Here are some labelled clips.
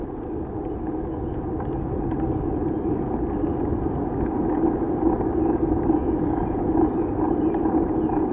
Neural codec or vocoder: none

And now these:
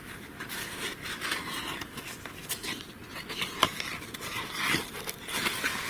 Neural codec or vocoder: none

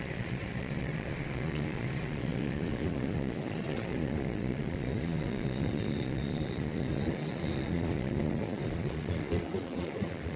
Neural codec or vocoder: vocoder, Vocos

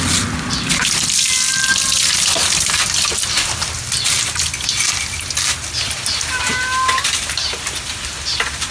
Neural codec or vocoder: none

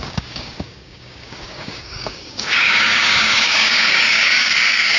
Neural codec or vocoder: codec, DAC